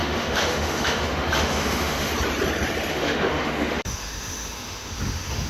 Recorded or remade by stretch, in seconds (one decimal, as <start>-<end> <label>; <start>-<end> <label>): 0.0-2.1 remade; 2.1-2.9 recorded; 2.9-5.5 remade